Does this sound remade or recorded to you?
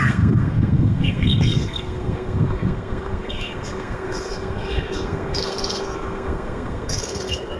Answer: remade